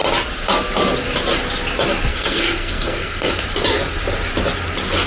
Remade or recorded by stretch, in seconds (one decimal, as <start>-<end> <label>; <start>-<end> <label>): 0.0-2.1 recorded; 2.1-3.3 remade; 3.3-5.1 recorded